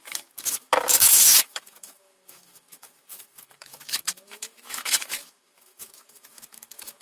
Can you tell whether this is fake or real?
fake